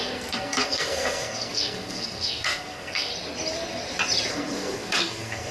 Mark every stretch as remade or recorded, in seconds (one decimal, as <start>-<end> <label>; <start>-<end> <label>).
0.0-3.1 remade; 3.1-4.3 recorded; 4.3-5.5 remade

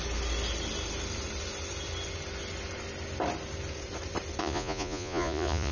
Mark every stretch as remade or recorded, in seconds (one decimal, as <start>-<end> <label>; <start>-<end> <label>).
0.0-4.4 recorded; 4.4-5.7 remade

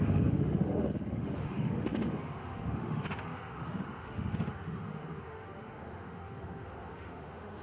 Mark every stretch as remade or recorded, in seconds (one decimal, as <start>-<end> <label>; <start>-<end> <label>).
0.0-7.6 remade

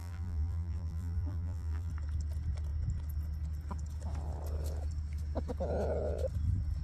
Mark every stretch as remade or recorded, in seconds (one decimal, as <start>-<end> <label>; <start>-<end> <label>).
0.0-1.9 remade; 1.9-6.8 recorded

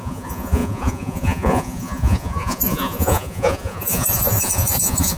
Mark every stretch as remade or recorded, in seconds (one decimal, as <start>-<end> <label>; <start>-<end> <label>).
0.0-5.2 remade

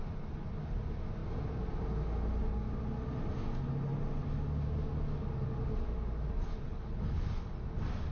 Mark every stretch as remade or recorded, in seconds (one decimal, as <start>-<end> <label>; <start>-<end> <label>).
0.0-6.5 recorded; 6.5-7.5 remade; 7.5-8.1 recorded

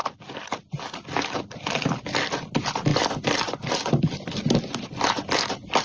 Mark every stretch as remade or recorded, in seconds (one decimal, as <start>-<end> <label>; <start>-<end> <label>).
0.0-5.8 recorded

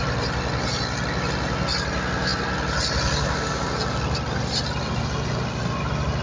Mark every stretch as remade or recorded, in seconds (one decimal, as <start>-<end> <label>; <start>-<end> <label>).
0.0-6.2 recorded